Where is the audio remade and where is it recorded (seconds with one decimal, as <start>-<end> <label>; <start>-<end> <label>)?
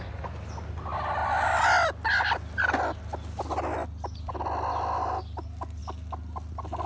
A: 0.0-6.9 recorded